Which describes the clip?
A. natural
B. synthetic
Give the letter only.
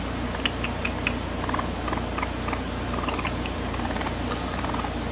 A